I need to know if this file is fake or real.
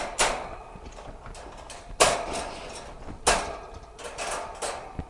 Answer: real